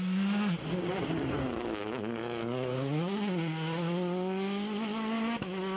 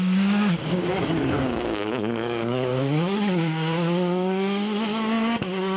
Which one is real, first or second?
first